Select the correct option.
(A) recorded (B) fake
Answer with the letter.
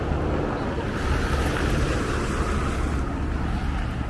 A